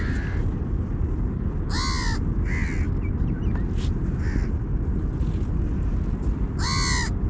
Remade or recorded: recorded